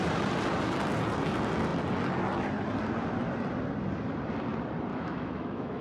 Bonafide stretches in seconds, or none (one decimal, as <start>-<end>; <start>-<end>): 0.0-4.9